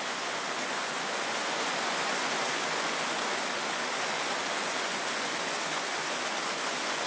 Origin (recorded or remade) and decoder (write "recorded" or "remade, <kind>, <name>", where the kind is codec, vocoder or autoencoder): remade, vocoder, Vocos